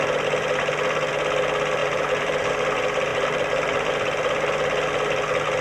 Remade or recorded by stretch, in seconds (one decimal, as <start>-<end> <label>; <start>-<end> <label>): 0.0-1.8 recorded; 1.8-2.5 remade; 2.5-3.1 recorded; 3.1-3.9 remade; 3.9-5.6 recorded